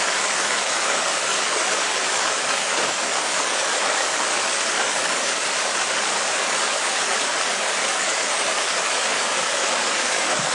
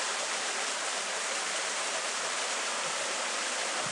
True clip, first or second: second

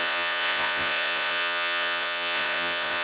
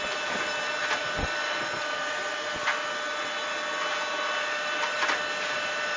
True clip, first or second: second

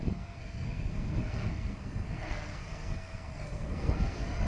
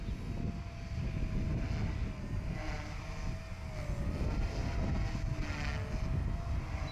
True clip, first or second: second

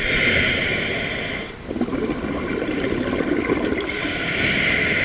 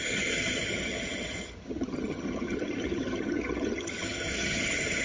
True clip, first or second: first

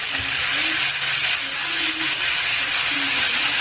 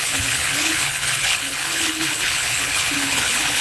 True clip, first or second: first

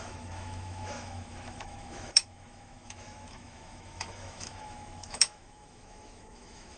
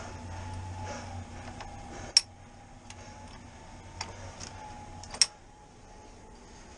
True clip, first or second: second